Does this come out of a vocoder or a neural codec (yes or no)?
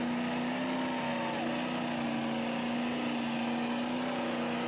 no